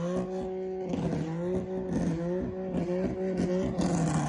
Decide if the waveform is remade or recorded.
recorded